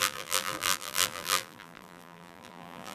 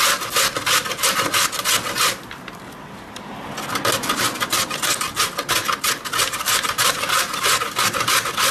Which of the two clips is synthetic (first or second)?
first